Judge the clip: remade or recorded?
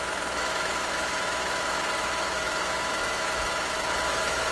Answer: remade